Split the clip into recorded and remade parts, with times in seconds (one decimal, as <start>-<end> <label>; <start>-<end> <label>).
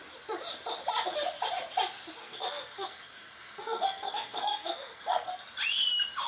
0.0-2.2 recorded; 2.2-5.3 remade; 5.3-6.3 recorded